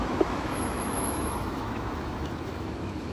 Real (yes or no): no